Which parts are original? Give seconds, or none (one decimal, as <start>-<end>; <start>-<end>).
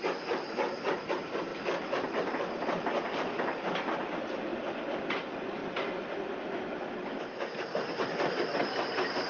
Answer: 0.0-9.3